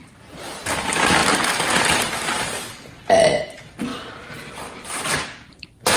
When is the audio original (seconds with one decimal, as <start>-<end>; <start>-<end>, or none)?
0.0-6.0